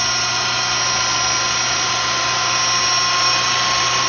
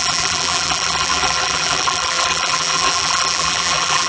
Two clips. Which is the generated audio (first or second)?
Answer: second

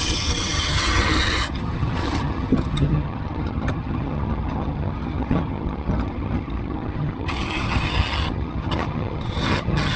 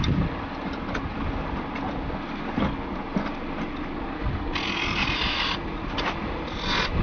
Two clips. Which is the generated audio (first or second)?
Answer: first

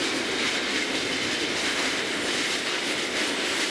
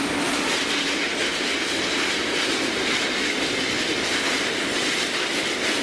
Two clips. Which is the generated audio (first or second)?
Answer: second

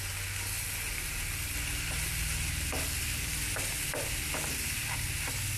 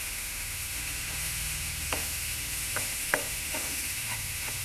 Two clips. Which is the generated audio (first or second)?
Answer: second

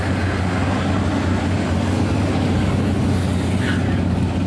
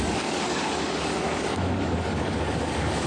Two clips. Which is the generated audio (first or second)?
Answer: second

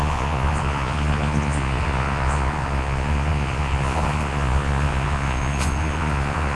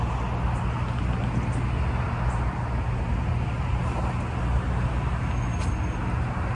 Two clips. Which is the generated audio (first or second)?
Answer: first